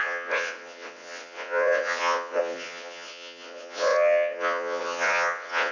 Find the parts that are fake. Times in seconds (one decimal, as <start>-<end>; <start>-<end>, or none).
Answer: 0.0-5.7